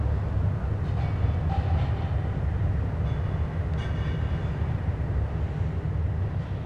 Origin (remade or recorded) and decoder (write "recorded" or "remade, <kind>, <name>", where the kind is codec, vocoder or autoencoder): recorded